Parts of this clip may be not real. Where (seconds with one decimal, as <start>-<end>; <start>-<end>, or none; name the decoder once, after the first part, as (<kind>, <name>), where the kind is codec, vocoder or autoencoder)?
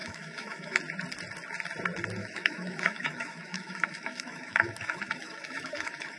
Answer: 0.0-0.8 (autoencoder, DAC-VAE); 2.2-6.2